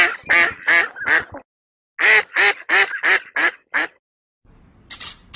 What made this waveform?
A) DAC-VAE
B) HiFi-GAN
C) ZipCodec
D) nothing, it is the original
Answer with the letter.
D